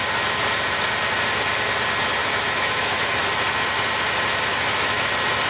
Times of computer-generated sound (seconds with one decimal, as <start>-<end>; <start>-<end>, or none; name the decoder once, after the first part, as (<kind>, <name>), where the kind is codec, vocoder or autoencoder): 2.2-3.2 (autoencoder, DAC-VAE); 4.5-5.1